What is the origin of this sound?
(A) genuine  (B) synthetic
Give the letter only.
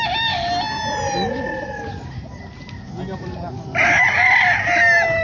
A